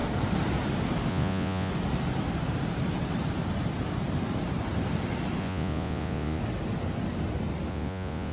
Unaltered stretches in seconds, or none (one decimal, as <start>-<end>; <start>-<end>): 0.0-1.1; 1.7-5.4; 6.4-7.7